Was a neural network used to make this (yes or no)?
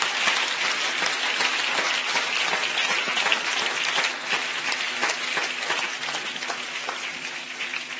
no